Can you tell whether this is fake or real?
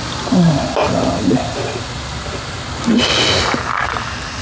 real